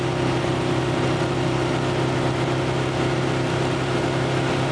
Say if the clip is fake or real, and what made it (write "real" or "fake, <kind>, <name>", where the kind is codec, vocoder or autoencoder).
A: real